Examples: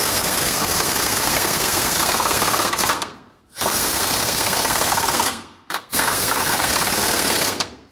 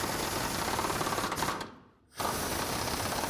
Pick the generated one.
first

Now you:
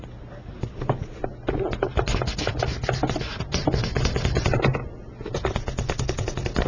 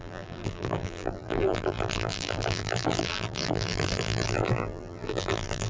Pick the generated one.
second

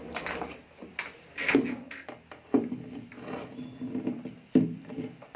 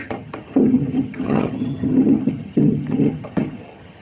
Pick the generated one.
second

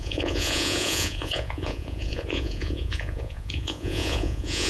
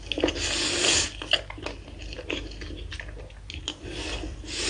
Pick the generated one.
first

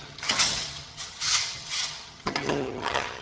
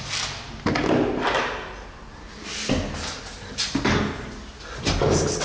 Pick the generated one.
first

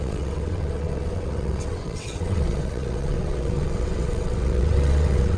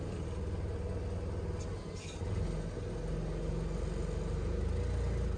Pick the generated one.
first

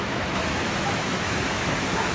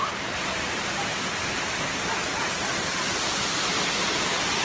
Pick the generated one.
first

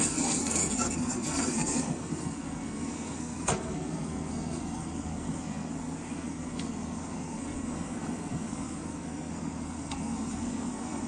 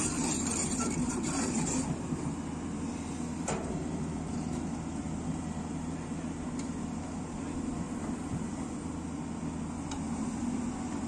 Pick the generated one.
first